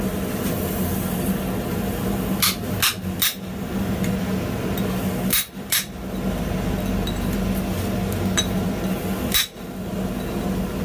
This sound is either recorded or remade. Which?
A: recorded